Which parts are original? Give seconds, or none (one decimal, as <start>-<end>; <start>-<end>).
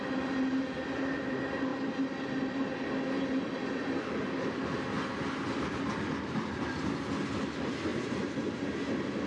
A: 0.0-9.3